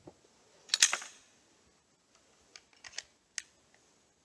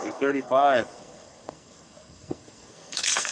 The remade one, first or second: second